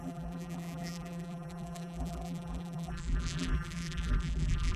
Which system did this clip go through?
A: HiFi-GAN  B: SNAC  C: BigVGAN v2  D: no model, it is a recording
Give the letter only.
C